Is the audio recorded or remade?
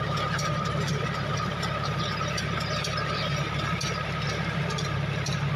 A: recorded